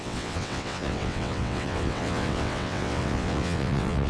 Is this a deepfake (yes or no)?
yes